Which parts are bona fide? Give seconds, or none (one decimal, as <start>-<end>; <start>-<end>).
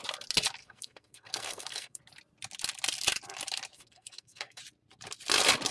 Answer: 0.0-0.6; 2.0-3.7; 4.6-5.7